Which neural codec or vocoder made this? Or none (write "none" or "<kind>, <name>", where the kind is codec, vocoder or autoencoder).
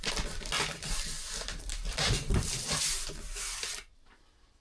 none